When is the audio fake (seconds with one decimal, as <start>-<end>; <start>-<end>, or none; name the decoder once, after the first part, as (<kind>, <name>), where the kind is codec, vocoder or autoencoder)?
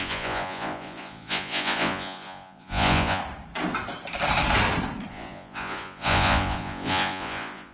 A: 0.0-3.2 (vocoder, Vocos); 5.1-7.7